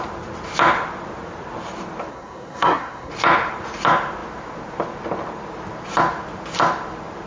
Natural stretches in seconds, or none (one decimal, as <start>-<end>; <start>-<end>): 0.0-2.1; 3.1-7.3